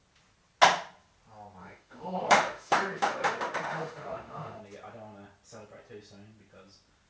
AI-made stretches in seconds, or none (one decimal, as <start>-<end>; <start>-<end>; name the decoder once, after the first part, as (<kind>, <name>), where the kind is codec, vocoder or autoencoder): 1.6-4.6 (autoencoder, DAC-VAE)